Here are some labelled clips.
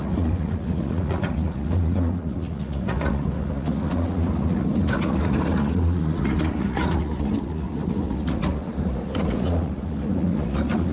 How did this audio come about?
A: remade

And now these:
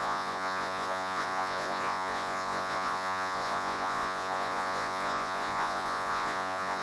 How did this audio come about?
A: remade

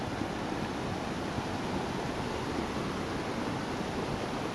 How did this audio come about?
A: recorded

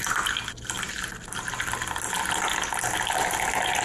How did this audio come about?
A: recorded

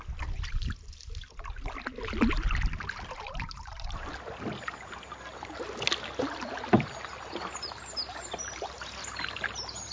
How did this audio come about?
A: recorded